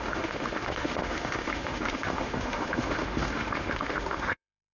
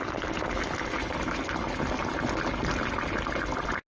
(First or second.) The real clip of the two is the second